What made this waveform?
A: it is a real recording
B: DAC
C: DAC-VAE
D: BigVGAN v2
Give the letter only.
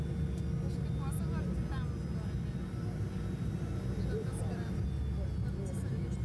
A